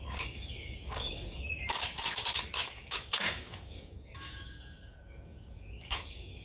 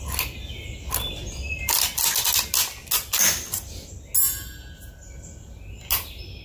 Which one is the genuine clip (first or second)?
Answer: second